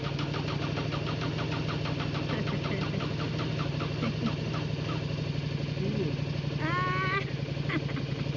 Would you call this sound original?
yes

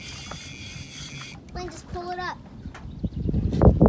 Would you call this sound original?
yes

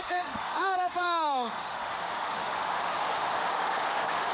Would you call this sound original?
no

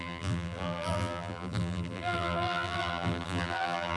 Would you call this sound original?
no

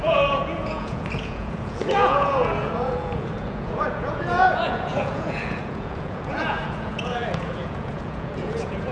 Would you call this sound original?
no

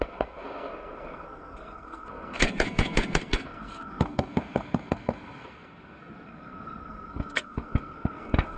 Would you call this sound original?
no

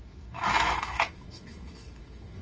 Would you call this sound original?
no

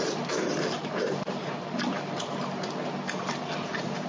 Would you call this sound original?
no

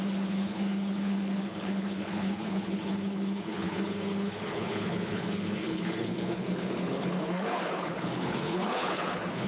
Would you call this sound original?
no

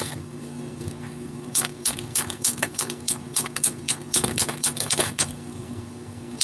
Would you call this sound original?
no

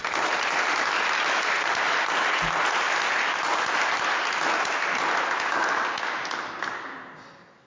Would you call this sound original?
yes